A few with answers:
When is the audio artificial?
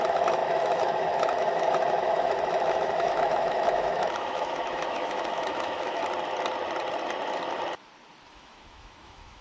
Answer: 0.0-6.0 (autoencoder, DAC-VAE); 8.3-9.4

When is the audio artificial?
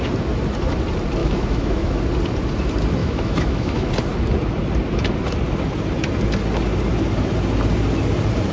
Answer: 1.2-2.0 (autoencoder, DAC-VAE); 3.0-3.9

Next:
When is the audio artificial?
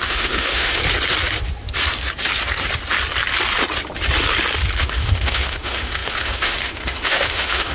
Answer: 0.0-0.8 (autoencoder, DAC-VAE); 4.8-7.7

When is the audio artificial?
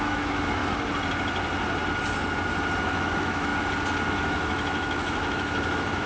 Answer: 0.0-0.6 (autoencoder, DAC-VAE); 2.8-3.5; 4.1-6.1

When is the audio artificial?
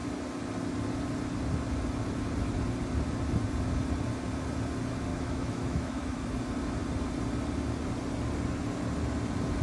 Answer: 5.1-6.2 (autoencoder, DAC-VAE)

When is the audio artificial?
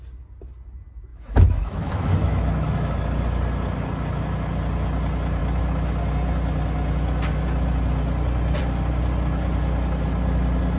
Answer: 1.1-2.9 (autoencoder, DAC-VAE)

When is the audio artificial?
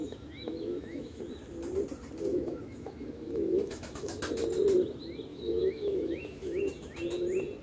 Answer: 0.0-1.2 (autoencoder, DAC-VAE); 2.3-4.2; 5.3-6.6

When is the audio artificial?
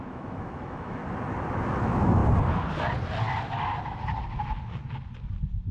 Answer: 0.0-1.0 (autoencoder, DAC-VAE); 1.7-2.2